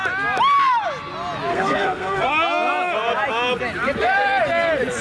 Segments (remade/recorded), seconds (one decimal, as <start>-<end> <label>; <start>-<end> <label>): 0.0-1.5 recorded; 1.5-2.3 remade; 2.3-5.0 recorded